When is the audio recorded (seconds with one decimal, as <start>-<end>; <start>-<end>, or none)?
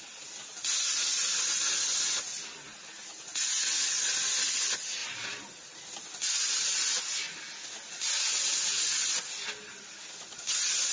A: 0.0-10.9